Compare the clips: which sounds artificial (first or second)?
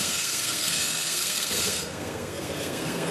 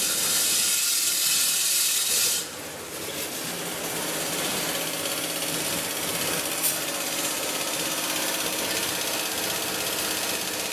first